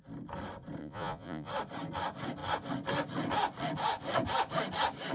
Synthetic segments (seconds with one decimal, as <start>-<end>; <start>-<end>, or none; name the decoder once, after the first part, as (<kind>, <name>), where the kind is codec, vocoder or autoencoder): 0.8-1.5 (vocoder, Vocos)